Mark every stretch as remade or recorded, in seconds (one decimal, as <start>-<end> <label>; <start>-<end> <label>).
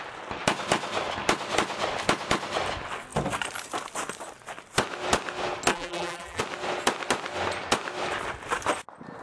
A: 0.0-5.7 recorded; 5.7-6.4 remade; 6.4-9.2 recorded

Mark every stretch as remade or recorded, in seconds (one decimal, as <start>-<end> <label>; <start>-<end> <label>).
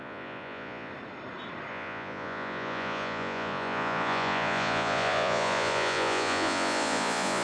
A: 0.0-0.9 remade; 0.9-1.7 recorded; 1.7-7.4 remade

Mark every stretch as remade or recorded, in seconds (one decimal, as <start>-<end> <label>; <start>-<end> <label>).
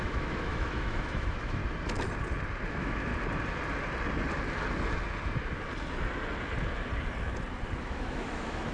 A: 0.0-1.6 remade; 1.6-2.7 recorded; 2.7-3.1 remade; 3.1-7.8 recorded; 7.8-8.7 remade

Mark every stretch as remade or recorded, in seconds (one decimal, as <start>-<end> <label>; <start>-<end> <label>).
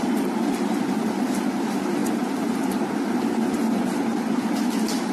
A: 0.0-5.1 recorded